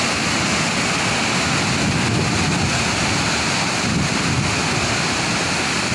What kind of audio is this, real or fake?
real